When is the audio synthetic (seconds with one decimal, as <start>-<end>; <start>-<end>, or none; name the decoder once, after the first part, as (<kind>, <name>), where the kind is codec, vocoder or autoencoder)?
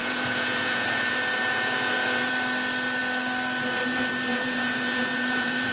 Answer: 0.0-2.3 (vocoder, Vocos); 4.3-5.7